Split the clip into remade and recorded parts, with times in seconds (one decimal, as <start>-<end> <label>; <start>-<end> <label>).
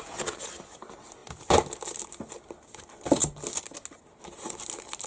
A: 0.0-5.1 recorded